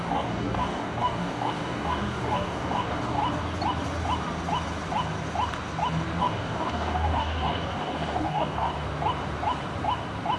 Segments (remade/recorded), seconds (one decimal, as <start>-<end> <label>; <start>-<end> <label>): 0.0-3.2 remade; 3.2-6.2 recorded; 6.2-8.7 remade; 8.7-10.4 recorded